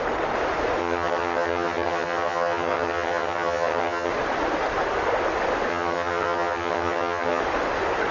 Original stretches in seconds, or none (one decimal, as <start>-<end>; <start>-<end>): 0.0-0.8; 4.1-5.7; 7.4-8.1